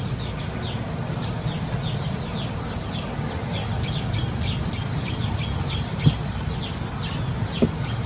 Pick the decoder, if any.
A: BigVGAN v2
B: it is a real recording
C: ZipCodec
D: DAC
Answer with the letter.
B